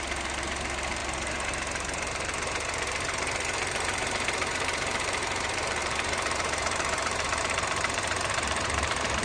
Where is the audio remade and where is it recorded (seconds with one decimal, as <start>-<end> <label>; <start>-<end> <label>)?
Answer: 0.0-9.2 remade